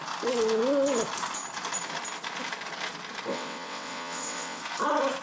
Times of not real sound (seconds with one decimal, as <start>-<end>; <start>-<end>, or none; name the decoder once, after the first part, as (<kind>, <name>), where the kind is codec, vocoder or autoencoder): 3.3-4.6 (vocoder, WaveNeXt)